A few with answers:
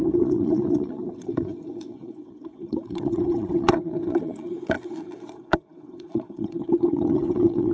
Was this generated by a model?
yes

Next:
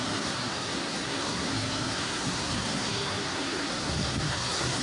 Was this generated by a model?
yes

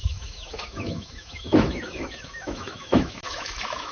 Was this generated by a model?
yes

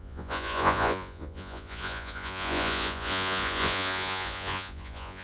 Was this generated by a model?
yes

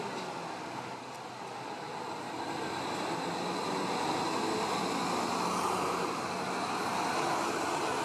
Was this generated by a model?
no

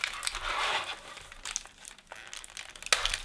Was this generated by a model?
no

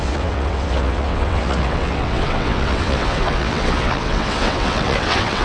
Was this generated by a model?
yes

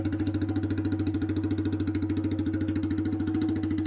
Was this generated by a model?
no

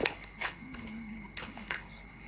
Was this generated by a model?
yes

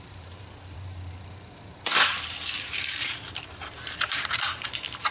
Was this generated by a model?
yes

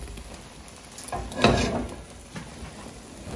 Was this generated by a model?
no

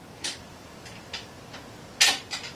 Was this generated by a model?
no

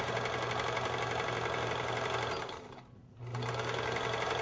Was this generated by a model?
no